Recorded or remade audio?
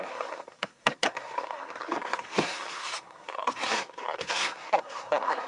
remade